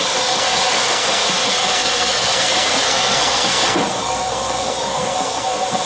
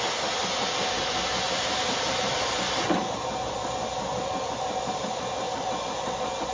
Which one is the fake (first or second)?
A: first